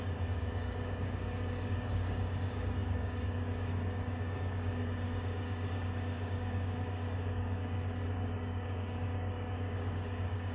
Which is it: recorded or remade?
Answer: remade